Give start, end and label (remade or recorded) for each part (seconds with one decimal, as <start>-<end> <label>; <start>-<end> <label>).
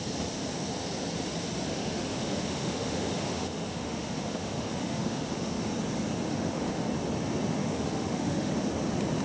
0.0-1.7 recorded; 1.7-5.7 remade; 5.7-6.3 recorded; 6.3-6.9 remade; 6.9-7.6 recorded; 7.6-8.5 remade; 8.5-9.2 recorded